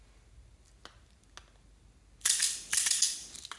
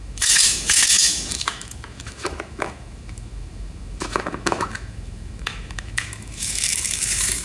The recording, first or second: first